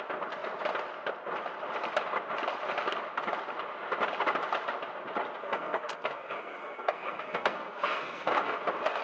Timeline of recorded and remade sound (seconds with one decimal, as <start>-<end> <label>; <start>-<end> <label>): 0.0-5.4 recorded; 5.4-8.6 remade; 8.6-9.0 recorded